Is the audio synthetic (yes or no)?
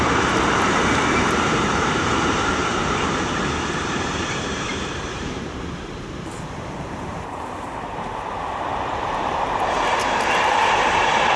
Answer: yes